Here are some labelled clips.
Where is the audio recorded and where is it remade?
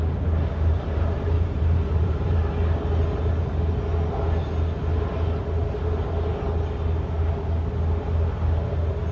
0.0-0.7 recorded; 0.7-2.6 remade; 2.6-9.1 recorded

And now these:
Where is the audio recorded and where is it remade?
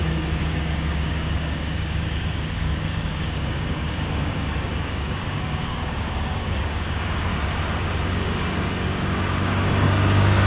0.0-7.3 remade; 7.3-8.1 recorded; 8.1-10.5 remade